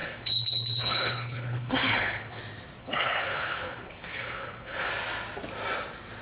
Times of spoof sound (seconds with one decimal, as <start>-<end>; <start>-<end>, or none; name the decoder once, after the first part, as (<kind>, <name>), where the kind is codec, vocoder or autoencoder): 0.0-2.4 (codec, HILCodec); 2.8-4.9